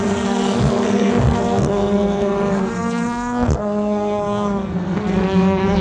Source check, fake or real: fake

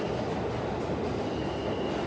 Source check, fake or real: real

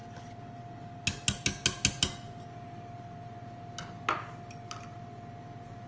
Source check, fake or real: real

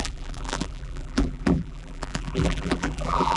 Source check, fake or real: fake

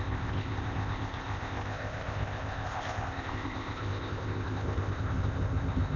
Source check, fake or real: fake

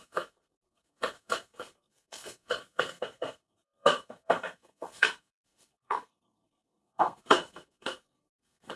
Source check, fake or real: fake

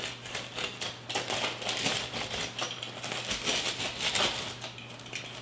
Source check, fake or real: real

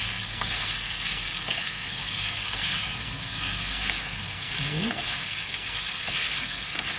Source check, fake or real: fake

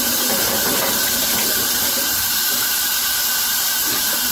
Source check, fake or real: fake